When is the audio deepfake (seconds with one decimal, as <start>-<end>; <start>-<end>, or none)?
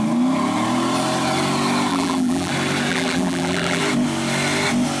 1.9-2.5; 2.9-3.8